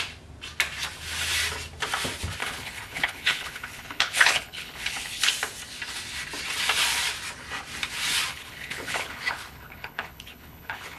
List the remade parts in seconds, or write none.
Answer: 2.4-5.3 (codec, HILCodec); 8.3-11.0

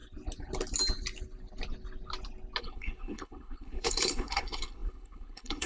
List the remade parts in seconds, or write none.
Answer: 2.6-5.7 (codec, HILCodec)

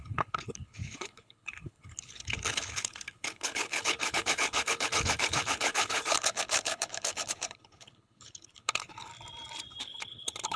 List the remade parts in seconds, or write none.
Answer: 0.0-9.1 (codec, HILCodec); 9.8-10.6